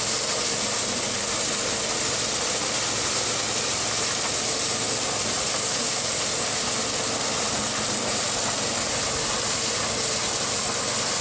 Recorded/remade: recorded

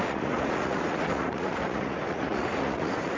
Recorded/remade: remade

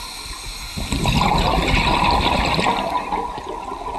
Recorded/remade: recorded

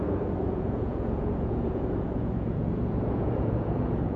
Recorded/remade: remade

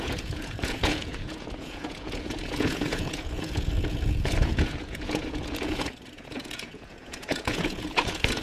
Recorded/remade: remade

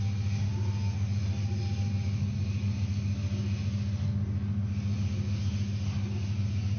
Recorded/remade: recorded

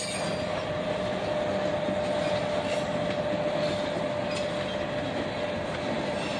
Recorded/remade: recorded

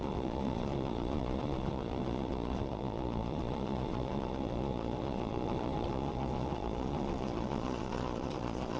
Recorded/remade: remade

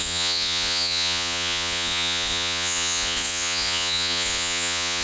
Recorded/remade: remade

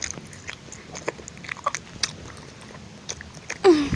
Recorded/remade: recorded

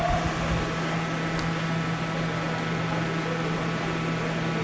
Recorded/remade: recorded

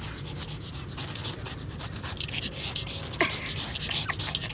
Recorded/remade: recorded